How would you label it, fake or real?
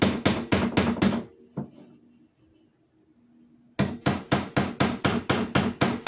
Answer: real